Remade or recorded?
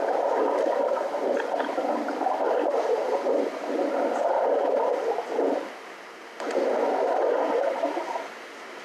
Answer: recorded